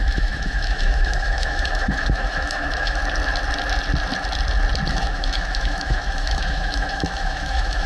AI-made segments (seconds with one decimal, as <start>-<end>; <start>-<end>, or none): 0.0-3.0; 4.9-7.9